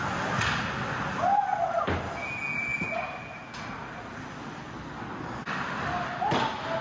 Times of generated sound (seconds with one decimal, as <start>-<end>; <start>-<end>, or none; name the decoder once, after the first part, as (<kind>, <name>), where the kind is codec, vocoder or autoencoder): none